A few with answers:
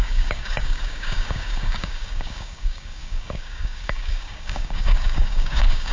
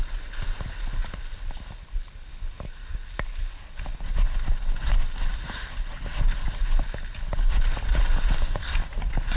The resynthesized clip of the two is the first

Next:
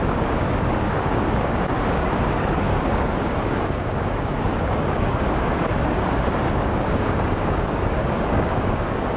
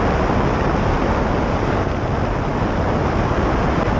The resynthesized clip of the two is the first